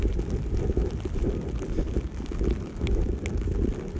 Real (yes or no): yes